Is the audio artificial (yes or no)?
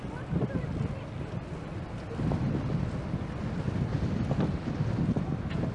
no